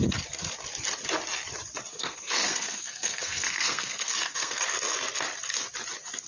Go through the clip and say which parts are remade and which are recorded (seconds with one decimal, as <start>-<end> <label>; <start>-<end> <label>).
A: 0.0-1.9 recorded; 1.9-4.6 remade; 4.6-6.3 recorded